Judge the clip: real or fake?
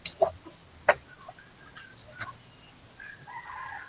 real